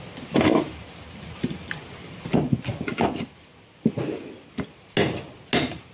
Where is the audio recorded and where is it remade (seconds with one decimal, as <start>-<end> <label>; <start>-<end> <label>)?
0.0-5.9 recorded